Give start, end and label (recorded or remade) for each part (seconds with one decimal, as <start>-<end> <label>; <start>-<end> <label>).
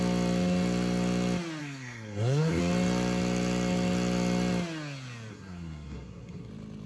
0.0-1.6 recorded; 1.6-2.6 remade; 2.6-5.3 recorded; 5.3-6.5 remade; 6.5-6.9 recorded